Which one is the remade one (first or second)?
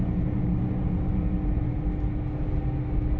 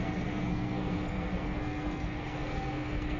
second